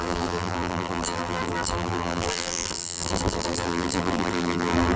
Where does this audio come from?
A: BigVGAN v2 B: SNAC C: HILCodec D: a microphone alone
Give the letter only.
A